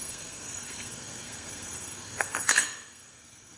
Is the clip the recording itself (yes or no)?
no